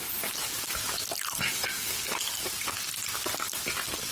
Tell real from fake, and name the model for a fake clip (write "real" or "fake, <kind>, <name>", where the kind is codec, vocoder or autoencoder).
real